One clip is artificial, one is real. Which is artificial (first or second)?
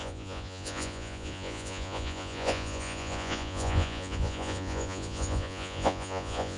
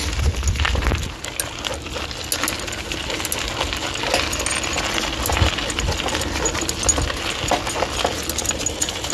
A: first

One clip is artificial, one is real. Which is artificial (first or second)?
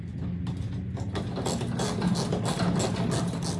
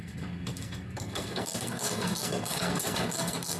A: second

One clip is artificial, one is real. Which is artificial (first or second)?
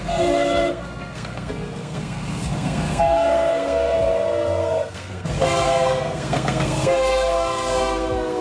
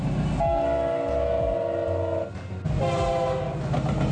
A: first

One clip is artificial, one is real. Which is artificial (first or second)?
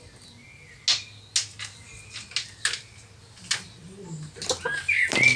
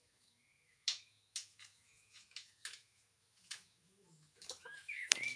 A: second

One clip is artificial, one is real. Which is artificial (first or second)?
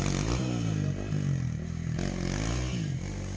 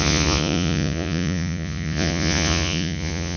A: second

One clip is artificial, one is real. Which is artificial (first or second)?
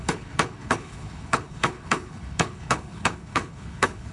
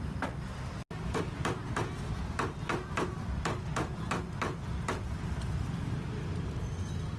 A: first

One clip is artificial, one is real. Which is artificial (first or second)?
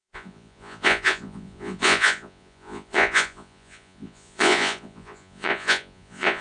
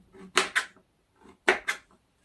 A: first